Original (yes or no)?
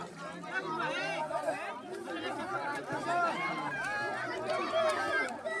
yes